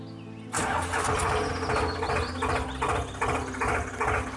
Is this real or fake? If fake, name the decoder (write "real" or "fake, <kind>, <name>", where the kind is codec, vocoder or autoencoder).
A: real